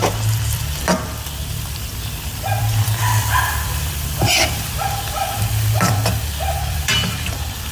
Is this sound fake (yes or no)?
yes